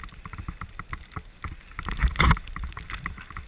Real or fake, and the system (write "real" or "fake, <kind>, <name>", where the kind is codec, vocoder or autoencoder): real